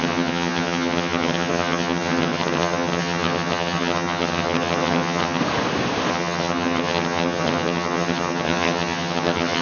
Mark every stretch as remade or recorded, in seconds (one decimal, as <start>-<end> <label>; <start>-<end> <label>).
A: 0.0-5.4 remade; 5.4-6.1 recorded; 6.1-9.6 remade